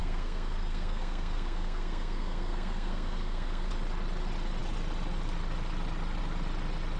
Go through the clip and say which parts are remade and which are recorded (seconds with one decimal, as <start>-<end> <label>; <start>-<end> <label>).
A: 0.0-3.7 remade; 3.7-7.0 recorded